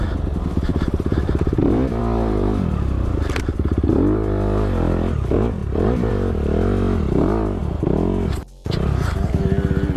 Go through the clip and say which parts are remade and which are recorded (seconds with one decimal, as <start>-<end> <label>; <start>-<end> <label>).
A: 0.0-0.7 recorded; 0.7-2.0 remade; 2.0-5.6 recorded; 5.6-6.1 remade; 6.1-10.0 recorded